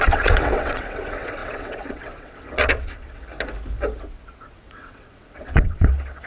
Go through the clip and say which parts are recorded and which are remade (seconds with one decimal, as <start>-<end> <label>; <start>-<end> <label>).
0.0-3.2 remade; 3.2-4.0 recorded; 4.0-6.3 remade